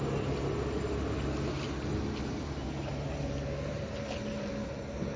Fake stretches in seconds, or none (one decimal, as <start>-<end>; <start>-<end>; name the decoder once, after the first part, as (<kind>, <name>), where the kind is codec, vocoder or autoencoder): 1.9-4.5 (vocoder, BigVGAN v2)